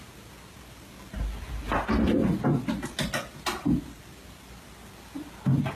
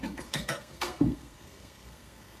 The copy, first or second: second